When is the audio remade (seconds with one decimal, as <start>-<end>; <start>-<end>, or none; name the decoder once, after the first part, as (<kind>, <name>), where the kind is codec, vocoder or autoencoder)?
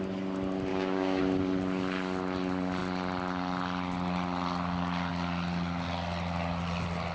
0.7-1.2 (codec, DAC)